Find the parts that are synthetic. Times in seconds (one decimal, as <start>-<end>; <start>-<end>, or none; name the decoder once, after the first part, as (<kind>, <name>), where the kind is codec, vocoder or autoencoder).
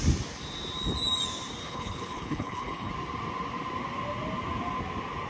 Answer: 1.6-2.9 (codec, HILCodec)